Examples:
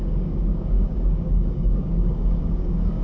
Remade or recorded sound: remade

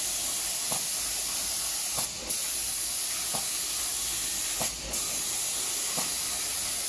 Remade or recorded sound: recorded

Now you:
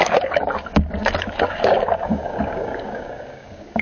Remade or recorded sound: remade